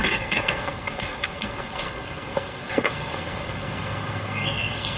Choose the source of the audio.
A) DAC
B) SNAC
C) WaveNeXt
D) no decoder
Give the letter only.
B